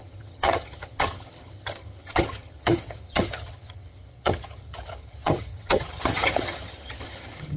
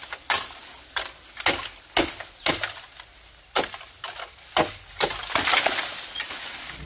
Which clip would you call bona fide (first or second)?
second